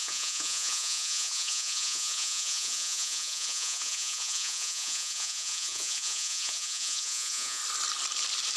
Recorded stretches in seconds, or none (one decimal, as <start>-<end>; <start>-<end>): 7.6-8.6